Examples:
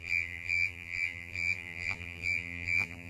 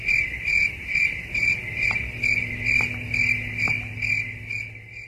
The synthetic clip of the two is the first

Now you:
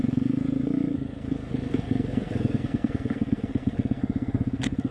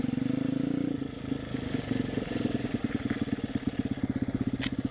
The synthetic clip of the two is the first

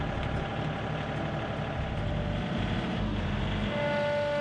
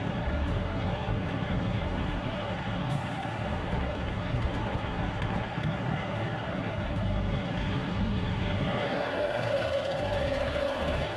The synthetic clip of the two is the second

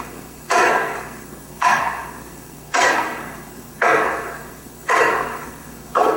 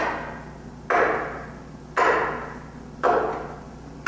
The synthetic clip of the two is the first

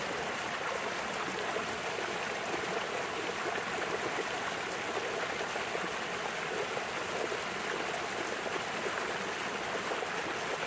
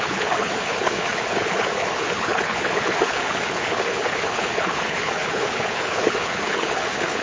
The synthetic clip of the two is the second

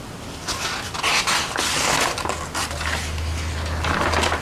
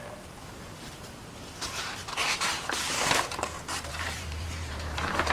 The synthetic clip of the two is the second